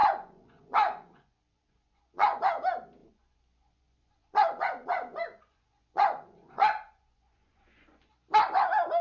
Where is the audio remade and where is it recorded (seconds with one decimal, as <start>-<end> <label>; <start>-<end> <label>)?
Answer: 0.0-2.4 remade; 2.4-3.0 recorded; 3.0-8.1 remade; 8.1-9.0 recorded